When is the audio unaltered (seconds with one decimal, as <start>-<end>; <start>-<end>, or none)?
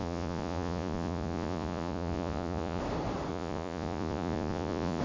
2.8-3.3